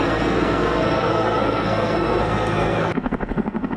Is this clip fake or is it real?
fake